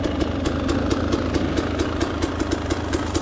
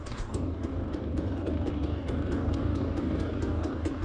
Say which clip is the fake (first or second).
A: second